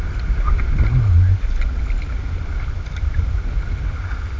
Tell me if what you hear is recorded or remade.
recorded